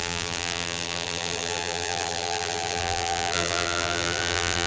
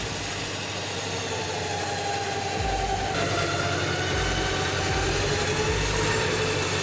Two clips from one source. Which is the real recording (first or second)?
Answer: second